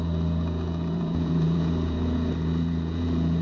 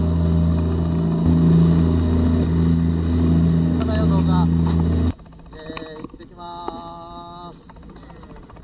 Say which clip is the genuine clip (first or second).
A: second